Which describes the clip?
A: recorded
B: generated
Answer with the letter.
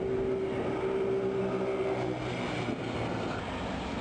A